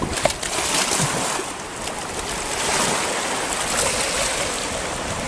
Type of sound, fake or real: real